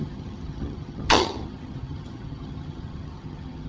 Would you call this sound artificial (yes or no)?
yes